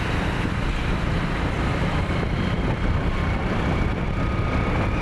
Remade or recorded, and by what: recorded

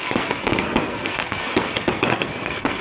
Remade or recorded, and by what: remade, codec, SNAC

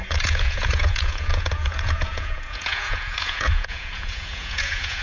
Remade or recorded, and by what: remade, vocoder, Vocos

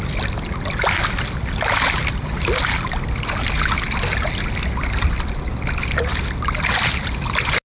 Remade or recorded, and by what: recorded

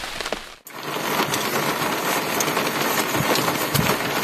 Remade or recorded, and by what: recorded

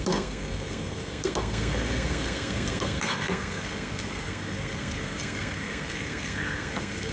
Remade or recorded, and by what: remade, codec, SNAC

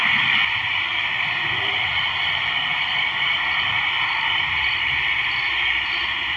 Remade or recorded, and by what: recorded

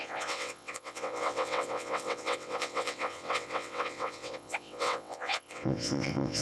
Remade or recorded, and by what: remade, vocoder, WaveNeXt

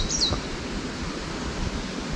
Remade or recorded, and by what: remade, vocoder, BigVGAN v2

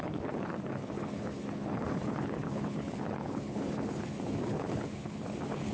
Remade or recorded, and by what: remade, codec, HILCodec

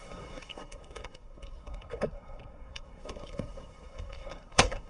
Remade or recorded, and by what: remade, codec, SNAC